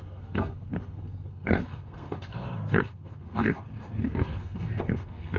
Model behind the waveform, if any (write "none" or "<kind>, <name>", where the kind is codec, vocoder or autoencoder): codec, SNAC